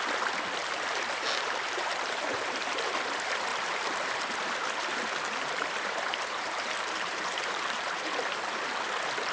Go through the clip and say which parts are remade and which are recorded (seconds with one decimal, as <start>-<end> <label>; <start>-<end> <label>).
0.0-0.6 recorded; 0.6-2.9 remade; 2.9-3.5 recorded; 3.5-8.0 remade; 8.0-9.3 recorded